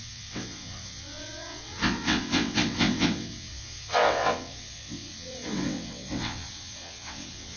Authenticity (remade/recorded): remade